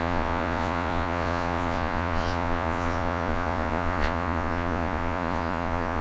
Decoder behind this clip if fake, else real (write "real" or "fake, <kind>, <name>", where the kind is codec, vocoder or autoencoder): fake, vocoder, Vocos